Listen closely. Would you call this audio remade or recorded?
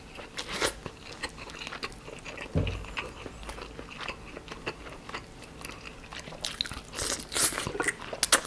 recorded